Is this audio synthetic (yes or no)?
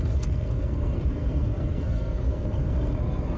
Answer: yes